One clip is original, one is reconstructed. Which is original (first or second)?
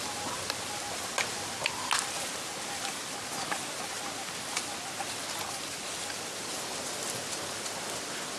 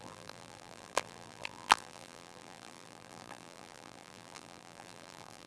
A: first